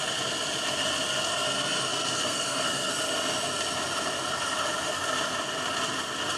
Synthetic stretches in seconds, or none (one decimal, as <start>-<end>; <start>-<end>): 1.3-2.9